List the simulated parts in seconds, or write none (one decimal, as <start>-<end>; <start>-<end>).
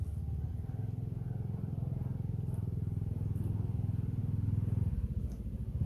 none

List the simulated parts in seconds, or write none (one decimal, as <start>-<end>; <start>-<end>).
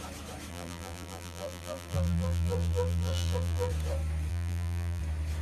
0.5-3.7; 4.3-5.0